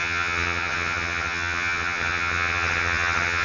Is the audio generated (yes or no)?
yes